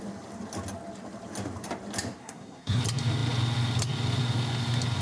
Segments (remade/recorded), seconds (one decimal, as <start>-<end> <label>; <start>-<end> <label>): 0.0-2.2 recorded; 2.2-2.8 remade; 2.8-5.0 recorded